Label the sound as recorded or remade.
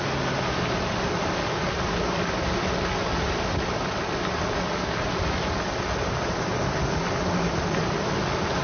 recorded